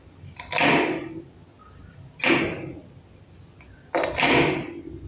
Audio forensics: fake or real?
real